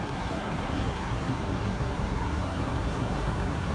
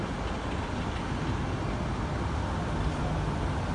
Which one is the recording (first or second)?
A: second